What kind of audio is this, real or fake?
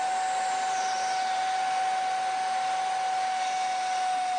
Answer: real